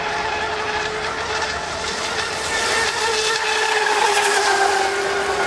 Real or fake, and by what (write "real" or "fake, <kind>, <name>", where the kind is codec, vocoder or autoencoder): real